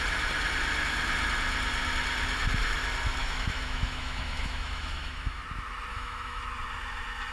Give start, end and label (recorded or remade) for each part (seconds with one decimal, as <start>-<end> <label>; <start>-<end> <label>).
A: 0.0-3.2 recorded; 3.2-5.4 remade; 5.4-5.9 recorded; 5.9-6.4 remade; 6.4-7.3 recorded

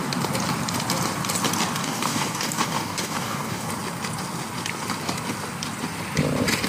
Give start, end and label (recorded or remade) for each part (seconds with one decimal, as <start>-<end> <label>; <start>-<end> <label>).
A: 0.0-1.8 recorded; 1.8-3.7 remade; 3.7-6.7 recorded

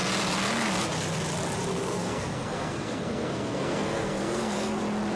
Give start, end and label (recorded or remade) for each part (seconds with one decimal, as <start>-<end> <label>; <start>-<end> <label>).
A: 0.0-1.7 recorded; 1.7-4.8 remade; 4.8-5.2 recorded

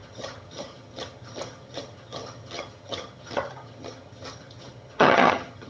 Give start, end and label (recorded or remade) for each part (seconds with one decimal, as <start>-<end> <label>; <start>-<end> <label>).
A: 0.0-5.7 remade

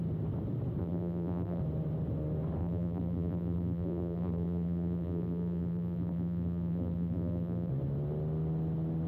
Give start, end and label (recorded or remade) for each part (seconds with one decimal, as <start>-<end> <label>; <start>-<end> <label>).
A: 0.0-0.8 recorded; 0.8-1.6 remade; 1.6-2.6 recorded; 2.6-7.7 remade; 7.7-9.1 recorded

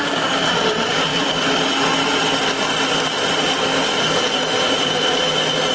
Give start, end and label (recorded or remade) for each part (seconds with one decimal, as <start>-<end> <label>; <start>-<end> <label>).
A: 0.0-5.7 recorded

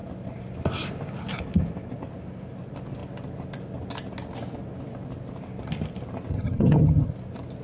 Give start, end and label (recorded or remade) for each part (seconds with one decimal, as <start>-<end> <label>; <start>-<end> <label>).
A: 0.0-6.3 recorded; 6.3-7.1 remade; 7.1-7.6 recorded